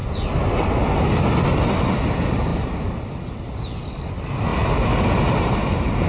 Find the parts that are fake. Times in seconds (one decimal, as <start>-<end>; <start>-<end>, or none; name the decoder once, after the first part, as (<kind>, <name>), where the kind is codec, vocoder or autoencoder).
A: 2.5-4.0 (vocoder, BigVGAN v2); 4.5-5.4